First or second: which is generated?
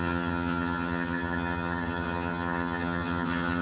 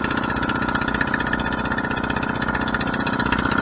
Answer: first